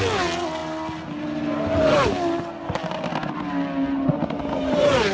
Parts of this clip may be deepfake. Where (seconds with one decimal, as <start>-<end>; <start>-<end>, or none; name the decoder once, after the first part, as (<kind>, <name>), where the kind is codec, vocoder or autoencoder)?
none